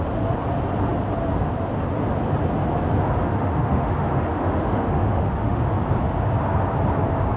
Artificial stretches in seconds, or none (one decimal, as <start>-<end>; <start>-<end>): 3.2-5.7